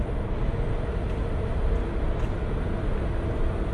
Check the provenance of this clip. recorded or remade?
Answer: recorded